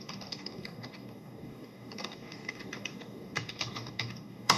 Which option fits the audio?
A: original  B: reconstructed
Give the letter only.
B